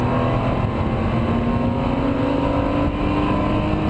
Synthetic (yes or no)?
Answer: no